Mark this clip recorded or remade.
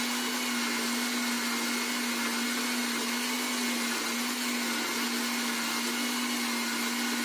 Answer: recorded